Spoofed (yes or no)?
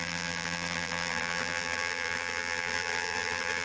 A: yes